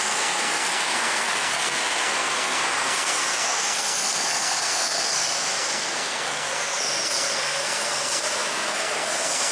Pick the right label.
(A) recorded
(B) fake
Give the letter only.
B